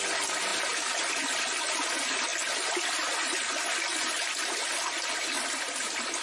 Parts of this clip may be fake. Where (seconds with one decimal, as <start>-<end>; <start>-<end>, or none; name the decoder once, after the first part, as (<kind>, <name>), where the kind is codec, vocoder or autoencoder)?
none